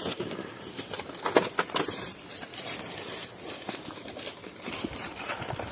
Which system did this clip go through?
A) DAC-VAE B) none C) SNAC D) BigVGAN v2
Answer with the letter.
D